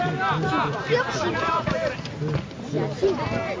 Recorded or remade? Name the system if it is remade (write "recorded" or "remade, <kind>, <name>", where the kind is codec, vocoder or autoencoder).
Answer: recorded